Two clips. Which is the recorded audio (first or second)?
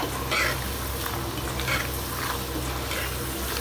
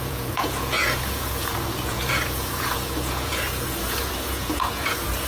first